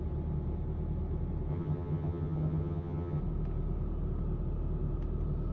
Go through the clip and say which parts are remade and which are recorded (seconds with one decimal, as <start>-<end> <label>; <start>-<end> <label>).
0.0-1.5 recorded; 1.5-3.2 remade; 3.2-5.5 recorded